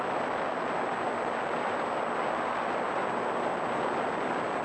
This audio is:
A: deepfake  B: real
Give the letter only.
B